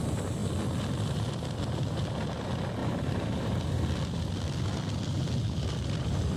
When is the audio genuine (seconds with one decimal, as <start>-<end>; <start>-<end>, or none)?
0.0-2.8; 3.6-6.4